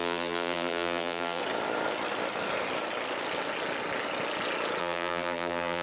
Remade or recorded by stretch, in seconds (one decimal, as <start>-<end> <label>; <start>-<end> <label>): 0.0-1.4 remade; 1.4-4.8 recorded; 4.8-5.8 remade